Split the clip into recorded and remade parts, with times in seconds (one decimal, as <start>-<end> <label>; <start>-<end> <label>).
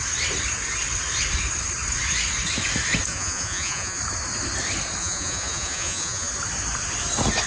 0.0-3.1 recorded; 3.1-4.0 remade; 4.0-5.0 recorded; 5.0-6.3 remade; 6.3-7.5 recorded